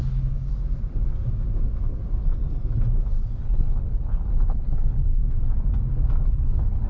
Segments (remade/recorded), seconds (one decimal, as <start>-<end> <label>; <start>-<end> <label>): 0.0-3.2 recorded; 3.2-5.2 remade; 5.2-6.2 recorded; 6.2-6.9 remade